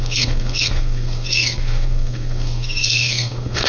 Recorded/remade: remade